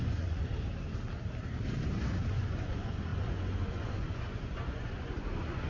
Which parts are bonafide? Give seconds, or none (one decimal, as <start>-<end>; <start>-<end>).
0.5-2.3